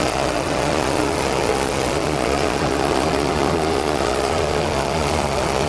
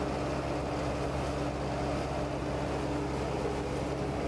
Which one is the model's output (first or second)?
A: first